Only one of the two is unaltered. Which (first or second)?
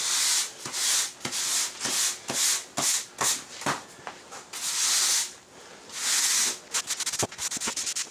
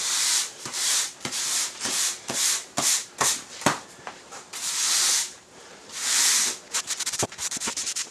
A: first